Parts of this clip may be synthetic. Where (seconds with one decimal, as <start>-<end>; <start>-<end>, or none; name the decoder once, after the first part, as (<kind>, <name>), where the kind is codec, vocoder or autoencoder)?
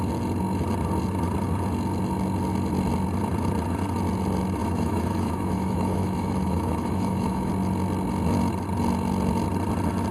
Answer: 4.6-7.5 (autoencoder, DAC-VAE)